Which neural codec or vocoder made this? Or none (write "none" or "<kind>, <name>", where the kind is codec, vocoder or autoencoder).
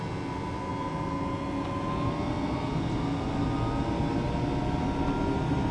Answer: none